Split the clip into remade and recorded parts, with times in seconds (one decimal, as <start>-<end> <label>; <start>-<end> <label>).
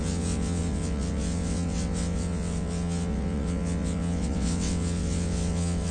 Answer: 0.0-5.9 remade